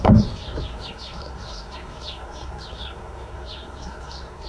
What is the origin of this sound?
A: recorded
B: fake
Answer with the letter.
B